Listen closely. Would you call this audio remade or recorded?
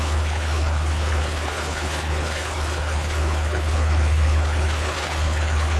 remade